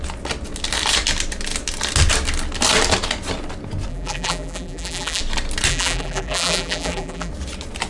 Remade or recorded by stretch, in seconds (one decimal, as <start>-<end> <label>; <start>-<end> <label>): 0.0-3.9 recorded; 3.9-5.2 remade; 5.2-5.7 recorded; 5.7-7.3 remade; 7.3-7.9 recorded